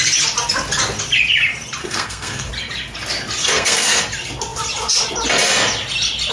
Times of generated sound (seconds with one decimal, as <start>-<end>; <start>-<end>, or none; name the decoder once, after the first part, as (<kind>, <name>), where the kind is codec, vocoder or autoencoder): 1.8-2.5 (codec, SNAC); 3.4-4.0